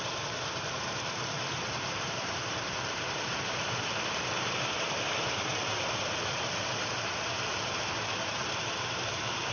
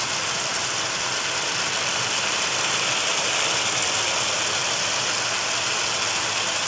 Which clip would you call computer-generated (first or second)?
first